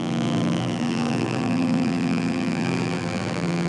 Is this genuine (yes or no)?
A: no